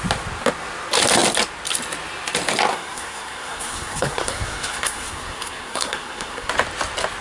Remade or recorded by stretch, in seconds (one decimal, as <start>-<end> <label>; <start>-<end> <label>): 0.0-2.7 recorded; 2.7-6.5 remade; 6.5-7.2 recorded